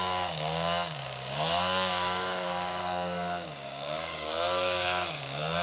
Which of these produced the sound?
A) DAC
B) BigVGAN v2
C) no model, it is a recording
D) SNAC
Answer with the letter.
A